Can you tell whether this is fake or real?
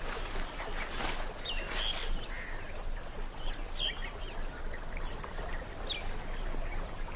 real